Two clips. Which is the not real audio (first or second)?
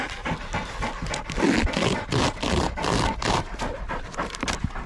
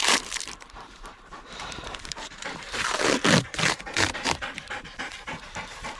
second